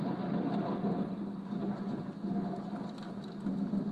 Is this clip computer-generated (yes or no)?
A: no